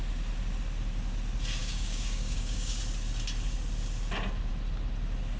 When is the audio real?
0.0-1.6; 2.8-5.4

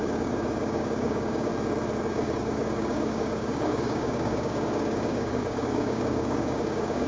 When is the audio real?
1.5-2.0